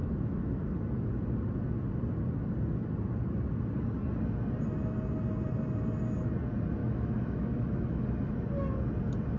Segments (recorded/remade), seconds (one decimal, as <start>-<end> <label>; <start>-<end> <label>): 0.0-0.6 remade; 0.6-6.8 recorded; 6.8-8.3 remade; 8.3-9.4 recorded